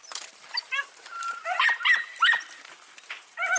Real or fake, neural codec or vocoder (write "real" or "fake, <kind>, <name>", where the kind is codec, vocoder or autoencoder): real